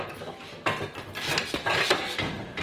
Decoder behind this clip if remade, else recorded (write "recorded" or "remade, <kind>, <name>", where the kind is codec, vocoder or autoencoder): recorded